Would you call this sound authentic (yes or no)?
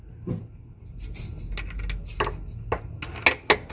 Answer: yes